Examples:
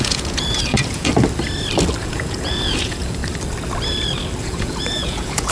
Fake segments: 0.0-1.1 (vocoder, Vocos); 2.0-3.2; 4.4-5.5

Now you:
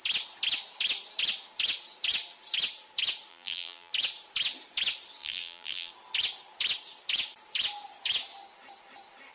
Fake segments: 3.3-3.9 (vocoder, BigVGAN v2); 5.2-5.9

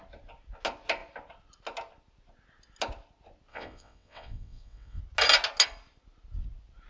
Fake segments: 3.5-5.0 (vocoder, WaveNeXt)

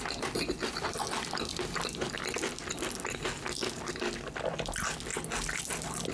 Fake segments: none

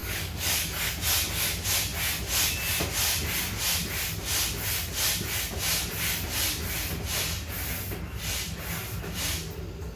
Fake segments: 0.0-0.9 (codec, DAC)

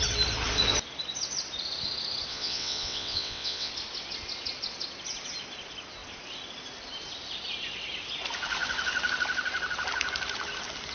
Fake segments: 2.3-3.7 (vocoder, WaveNeXt)